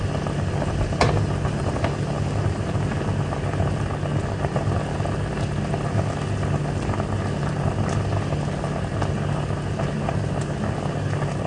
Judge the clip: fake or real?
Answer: real